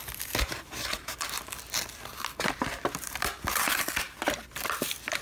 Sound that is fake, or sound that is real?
fake